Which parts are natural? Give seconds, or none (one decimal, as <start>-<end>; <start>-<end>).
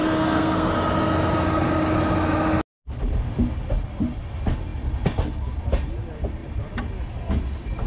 0.7-7.9